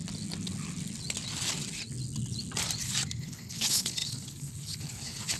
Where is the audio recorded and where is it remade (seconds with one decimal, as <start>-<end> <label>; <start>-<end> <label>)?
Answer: 0.0-3.2 recorded; 3.2-5.4 remade